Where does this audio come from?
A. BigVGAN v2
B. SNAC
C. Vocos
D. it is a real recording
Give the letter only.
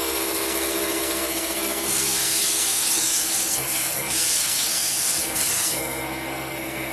B